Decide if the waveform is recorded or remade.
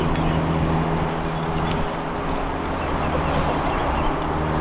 recorded